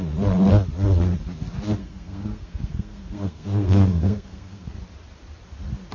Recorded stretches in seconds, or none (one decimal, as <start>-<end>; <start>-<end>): 0.0-1.8; 4.8-5.9